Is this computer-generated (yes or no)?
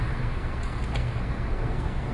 yes